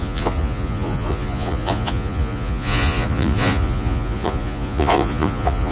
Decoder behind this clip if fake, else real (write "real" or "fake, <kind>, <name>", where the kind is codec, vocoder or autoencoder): fake, vocoder, Vocos